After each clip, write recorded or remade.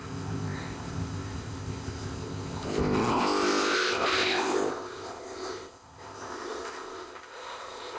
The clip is remade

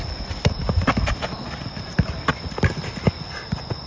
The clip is recorded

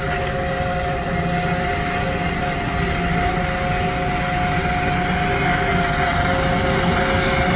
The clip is recorded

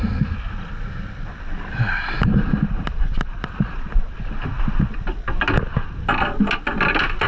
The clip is recorded